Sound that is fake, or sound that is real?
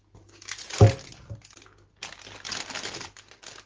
real